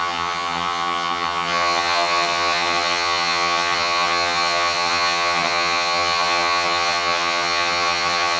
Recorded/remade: remade